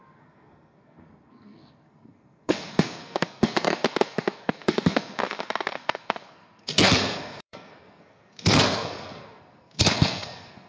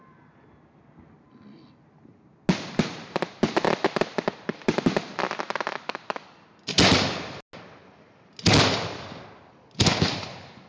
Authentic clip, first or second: second